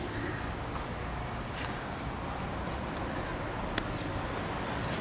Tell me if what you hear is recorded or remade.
recorded